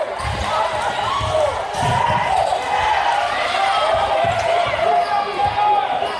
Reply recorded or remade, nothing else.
recorded